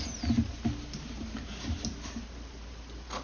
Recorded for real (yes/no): yes